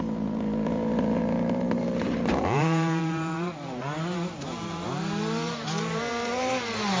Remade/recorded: remade